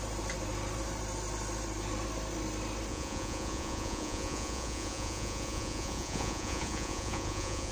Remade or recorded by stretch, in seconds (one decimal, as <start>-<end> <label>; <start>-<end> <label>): 0.0-2.9 recorded; 2.9-7.7 remade